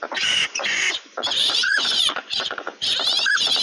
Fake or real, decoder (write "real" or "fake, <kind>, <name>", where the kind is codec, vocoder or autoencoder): fake, vocoder, Vocos